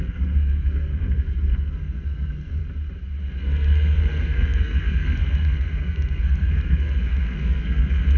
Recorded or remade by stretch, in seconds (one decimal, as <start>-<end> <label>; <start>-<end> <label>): 0.0-2.6 remade; 2.6-3.4 recorded; 3.4-8.2 remade